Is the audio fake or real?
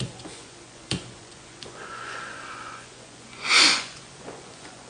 fake